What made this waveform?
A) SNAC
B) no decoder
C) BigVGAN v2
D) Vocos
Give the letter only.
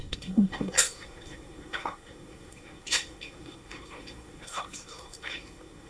A